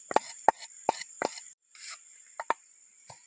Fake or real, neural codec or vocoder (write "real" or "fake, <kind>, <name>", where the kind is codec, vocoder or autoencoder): fake, vocoder, BigVGAN v2